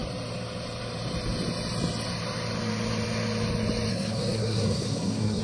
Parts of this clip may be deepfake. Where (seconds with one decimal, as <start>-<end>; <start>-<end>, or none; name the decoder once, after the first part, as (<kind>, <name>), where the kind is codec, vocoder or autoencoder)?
3.9-5.4 (codec, SNAC)